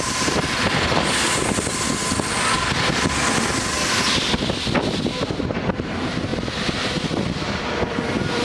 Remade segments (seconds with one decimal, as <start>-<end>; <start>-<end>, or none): none